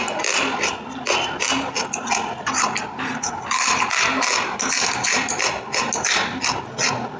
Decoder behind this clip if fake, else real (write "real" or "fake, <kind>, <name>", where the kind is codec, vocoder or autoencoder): real